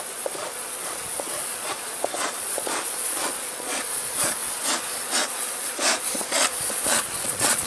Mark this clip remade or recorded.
remade